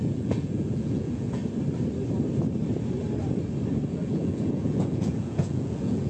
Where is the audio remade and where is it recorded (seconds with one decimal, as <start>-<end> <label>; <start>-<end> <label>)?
0.0-1.4 remade; 1.4-3.9 recorded; 3.9-6.1 remade